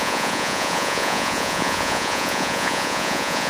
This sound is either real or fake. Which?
fake